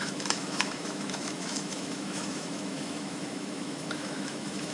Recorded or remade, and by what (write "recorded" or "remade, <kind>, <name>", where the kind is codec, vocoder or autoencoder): remade, autoencoder, DAC-VAE